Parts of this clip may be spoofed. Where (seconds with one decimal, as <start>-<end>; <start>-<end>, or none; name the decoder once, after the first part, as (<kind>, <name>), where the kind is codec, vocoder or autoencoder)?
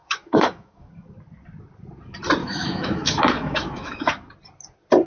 0.0-0.9 (autoencoder, DAC-VAE); 2.4-4.3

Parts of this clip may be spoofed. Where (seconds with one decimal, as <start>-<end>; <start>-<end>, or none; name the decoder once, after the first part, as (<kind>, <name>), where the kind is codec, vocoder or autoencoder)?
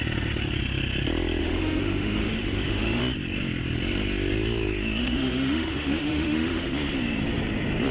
1.4-3.0 (autoencoder, DAC-VAE); 5.0-6.7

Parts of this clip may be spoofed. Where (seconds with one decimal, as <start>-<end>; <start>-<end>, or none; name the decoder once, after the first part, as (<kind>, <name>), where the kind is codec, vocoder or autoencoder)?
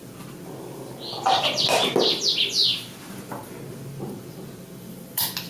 none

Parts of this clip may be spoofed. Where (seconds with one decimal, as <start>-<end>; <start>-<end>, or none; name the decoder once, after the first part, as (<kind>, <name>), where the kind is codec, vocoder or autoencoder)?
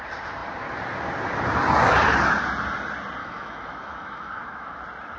3.2-4.8 (autoencoder, DAC-VAE)